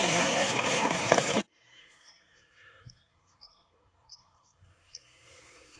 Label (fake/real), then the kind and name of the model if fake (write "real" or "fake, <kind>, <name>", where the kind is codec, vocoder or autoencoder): fake, codec, SNAC